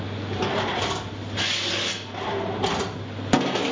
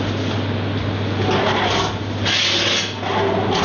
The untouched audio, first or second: second